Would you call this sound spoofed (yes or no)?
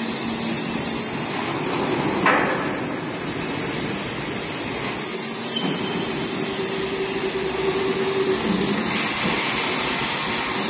no